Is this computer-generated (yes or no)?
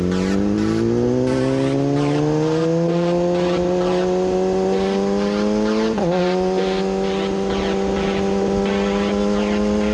no